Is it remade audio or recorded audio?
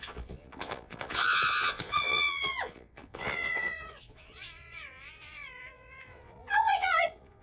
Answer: remade